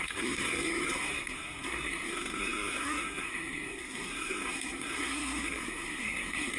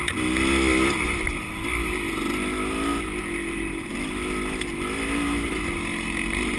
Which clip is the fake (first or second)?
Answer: first